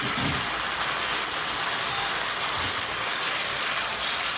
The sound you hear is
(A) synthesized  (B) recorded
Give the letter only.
B